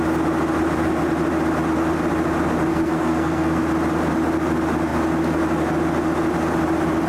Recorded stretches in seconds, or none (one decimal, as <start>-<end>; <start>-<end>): 0.0-2.7; 3.6-7.1